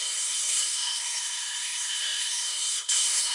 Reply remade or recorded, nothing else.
remade